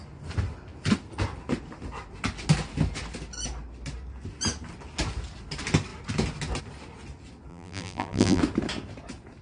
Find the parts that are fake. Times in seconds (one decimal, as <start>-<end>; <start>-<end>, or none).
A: 7.5-8.4